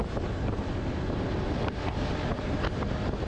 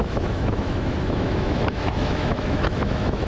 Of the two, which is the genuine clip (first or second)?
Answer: first